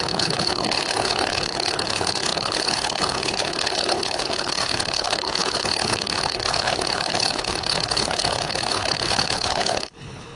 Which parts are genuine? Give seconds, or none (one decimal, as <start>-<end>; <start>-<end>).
none